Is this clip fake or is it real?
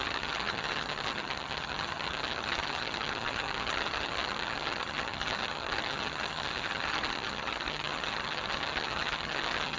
fake